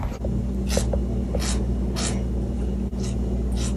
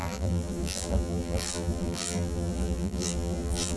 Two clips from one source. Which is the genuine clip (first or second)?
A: first